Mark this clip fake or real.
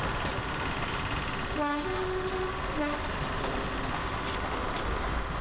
real